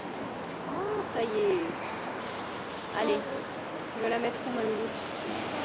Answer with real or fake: real